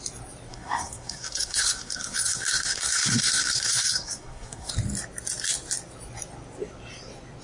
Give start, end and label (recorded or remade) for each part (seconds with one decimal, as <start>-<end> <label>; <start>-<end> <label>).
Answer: 0.0-0.5 recorded; 0.5-4.7 remade; 4.7-7.4 recorded